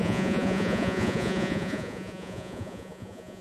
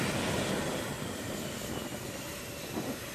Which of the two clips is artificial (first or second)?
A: first